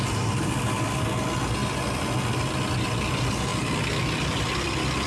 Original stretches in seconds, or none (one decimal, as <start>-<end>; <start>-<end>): 0.0-5.1